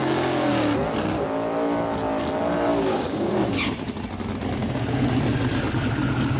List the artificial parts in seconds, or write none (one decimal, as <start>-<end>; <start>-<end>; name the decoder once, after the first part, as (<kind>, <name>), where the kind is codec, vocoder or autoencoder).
0.0-0.5 (codec, DAC); 2.7-3.3; 4.6-5.2